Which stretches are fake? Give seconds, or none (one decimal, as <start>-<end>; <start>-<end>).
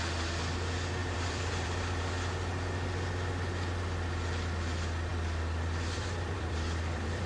1.0-2.0; 5.1-7.3